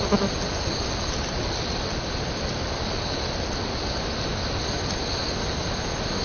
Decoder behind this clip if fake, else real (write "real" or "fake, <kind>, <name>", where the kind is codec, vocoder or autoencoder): real